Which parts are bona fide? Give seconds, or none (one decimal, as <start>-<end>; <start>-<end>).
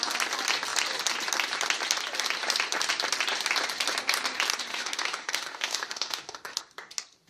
0.0-4.7; 6.6-7.3